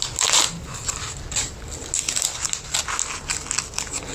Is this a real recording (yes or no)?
yes